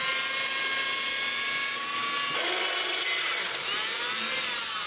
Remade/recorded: recorded